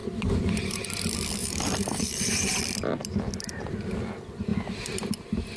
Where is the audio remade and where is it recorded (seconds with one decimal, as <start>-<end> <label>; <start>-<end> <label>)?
0.0-0.8 remade; 0.8-1.4 recorded; 1.4-2.6 remade; 2.6-5.6 recorded

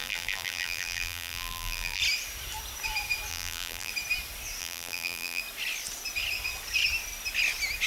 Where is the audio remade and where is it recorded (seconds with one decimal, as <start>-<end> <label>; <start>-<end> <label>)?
0.0-2.0 remade; 2.0-3.3 recorded; 3.3-3.9 remade; 3.9-4.6 recorded; 4.6-5.4 remade; 5.4-7.9 recorded

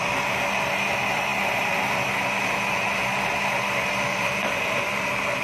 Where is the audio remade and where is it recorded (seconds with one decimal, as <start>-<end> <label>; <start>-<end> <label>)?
0.0-1.3 remade; 1.3-3.9 recorded; 3.9-5.4 remade

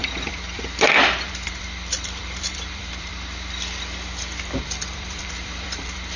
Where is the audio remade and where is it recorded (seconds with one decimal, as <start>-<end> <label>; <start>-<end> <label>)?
0.0-3.1 remade; 3.1-4.6 recorded; 4.6-6.2 remade

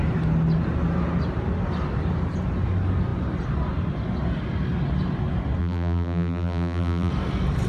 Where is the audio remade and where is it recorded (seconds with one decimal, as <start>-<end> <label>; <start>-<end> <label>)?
0.0-5.6 recorded; 5.6-7.1 remade; 7.1-7.7 recorded

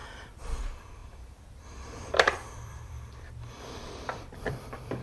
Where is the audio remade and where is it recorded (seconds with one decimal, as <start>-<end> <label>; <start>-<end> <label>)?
0.0-5.0 remade

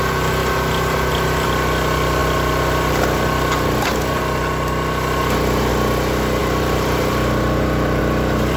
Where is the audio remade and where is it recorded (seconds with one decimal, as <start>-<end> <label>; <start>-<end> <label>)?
0.0-6.4 recorded; 6.4-8.0 remade; 8.0-8.6 recorded